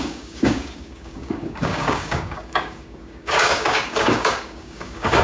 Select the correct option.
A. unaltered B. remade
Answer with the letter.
B